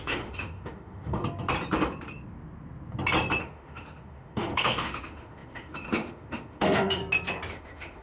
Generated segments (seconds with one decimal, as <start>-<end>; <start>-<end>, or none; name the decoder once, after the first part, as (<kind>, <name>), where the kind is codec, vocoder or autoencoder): 0.0-1.2 (autoencoder, DAC-VAE); 3.4-7.0; 7.5-8.0